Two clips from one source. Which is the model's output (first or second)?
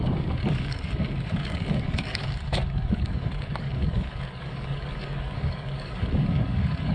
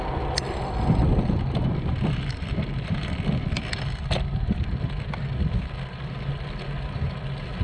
first